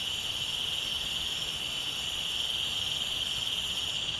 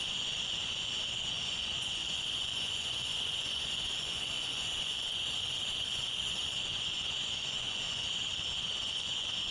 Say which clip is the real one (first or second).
first